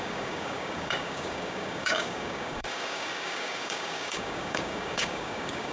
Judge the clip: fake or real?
fake